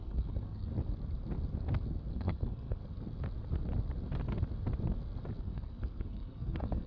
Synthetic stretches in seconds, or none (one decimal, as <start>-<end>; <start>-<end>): 0.0-0.7; 2.1-2.8; 5.4-6.9